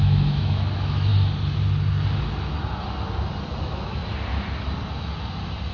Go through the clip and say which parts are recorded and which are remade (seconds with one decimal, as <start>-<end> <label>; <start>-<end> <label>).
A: 0.0-1.1 remade; 1.1-3.6 recorded; 3.6-4.0 remade; 4.0-5.7 recorded